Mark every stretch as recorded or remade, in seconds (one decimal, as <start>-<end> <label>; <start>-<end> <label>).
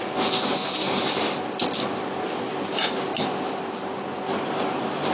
0.0-5.1 recorded